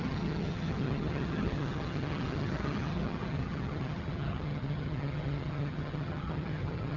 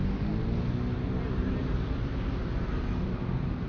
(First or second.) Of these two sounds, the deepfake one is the first